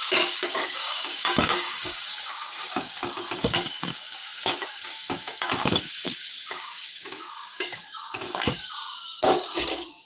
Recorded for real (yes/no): no